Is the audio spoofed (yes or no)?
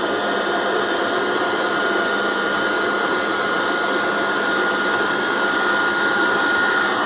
no